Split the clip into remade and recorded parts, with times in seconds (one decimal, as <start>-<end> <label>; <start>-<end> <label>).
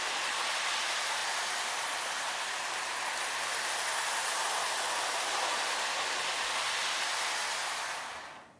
0.0-8.6 recorded